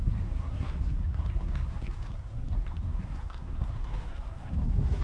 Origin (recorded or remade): remade